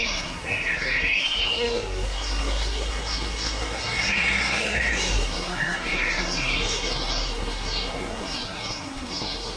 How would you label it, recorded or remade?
remade